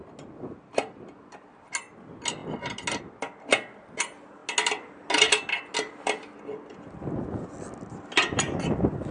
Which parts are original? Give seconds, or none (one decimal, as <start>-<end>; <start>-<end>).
0.0-9.1